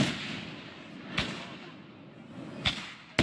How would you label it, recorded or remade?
recorded